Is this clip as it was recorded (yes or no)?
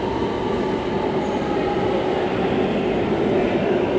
yes